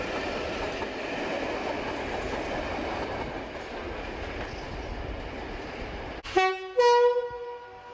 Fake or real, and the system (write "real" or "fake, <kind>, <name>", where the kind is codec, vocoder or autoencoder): real